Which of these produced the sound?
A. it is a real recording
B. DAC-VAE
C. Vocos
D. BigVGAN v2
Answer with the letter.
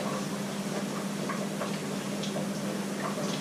A